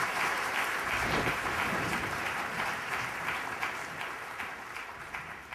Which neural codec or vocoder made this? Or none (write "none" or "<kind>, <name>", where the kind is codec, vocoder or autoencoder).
vocoder, BigVGAN v2